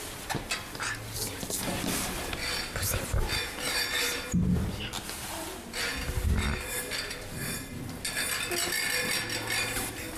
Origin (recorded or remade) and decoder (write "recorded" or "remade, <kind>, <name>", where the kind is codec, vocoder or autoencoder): recorded